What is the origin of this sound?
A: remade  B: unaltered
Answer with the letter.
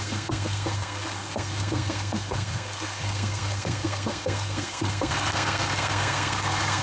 A